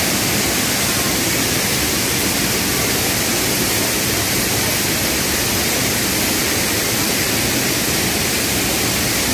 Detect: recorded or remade recorded